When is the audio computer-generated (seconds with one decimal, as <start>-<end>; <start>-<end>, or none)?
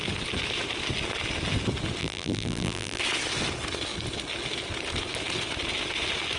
2.0-3.0